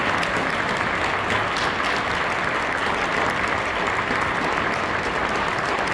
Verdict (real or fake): real